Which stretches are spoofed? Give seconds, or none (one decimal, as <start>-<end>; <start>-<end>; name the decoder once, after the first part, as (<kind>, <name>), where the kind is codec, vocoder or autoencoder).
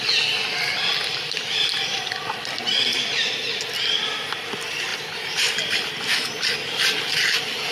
4.9-6.0 (vocoder, BigVGAN v2)